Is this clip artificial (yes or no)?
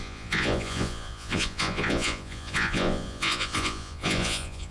yes